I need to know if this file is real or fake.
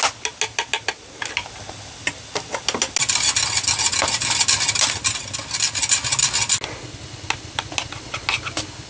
real